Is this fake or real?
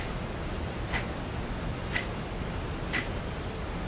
real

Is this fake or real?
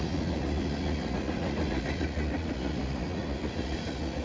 fake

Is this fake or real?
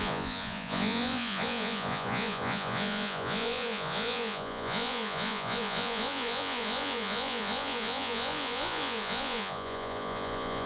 fake